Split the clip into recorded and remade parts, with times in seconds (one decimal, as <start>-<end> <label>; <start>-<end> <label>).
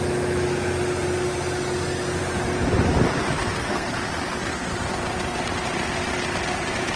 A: 0.0-3.2 recorded; 3.2-3.9 remade; 3.9-7.0 recorded